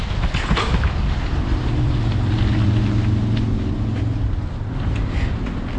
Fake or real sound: real